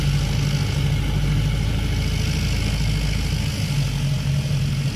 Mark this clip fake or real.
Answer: real